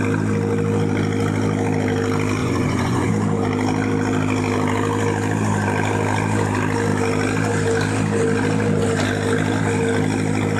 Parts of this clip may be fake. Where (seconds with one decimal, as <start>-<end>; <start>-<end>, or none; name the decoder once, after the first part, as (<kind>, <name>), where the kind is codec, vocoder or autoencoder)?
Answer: 2.4-3.1 (vocoder, Vocos)